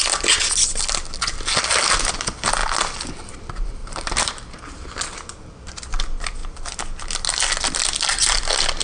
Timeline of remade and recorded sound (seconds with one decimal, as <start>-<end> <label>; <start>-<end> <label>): 0.0-3.8 recorded; 3.8-4.3 remade; 4.3-8.8 recorded